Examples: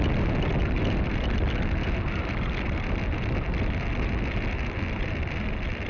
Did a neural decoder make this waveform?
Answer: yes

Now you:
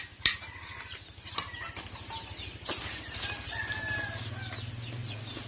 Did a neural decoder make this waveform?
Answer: no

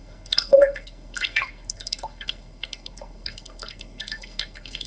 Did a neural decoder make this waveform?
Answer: yes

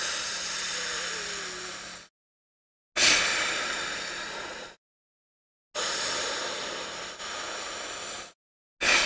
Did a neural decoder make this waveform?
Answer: no